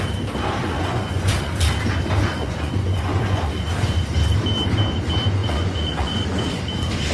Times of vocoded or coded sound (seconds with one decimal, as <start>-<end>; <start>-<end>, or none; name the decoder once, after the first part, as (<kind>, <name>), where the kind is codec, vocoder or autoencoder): 0.6-1.5 (vocoder, Vocos); 2.3-4.0; 5.4-6.6